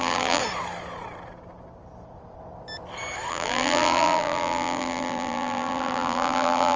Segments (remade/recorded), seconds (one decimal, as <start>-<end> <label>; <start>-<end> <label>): 0.0-0.4 remade; 0.4-3.3 recorded; 3.3-6.8 remade